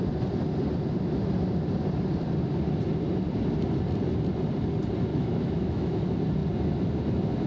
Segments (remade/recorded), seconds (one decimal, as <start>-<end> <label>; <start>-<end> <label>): 0.0-5.1 recorded; 5.1-6.0 remade; 6.0-7.5 recorded